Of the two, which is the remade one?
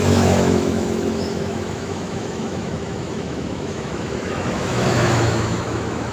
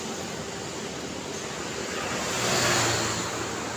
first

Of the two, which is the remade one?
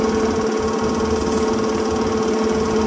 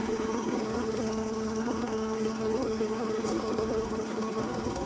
second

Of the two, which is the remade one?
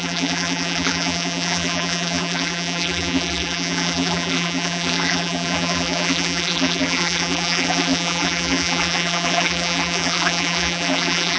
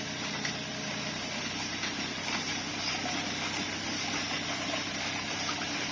first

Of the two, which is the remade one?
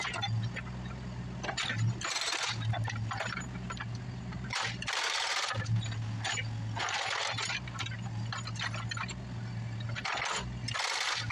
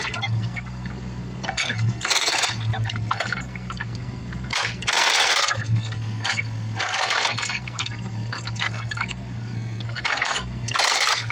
second